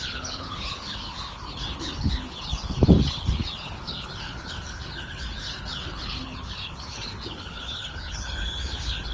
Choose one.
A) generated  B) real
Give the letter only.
A